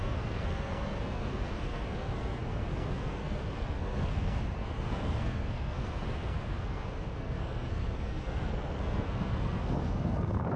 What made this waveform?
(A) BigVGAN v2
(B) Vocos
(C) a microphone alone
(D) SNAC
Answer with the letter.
D